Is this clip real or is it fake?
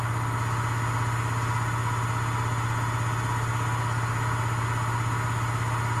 real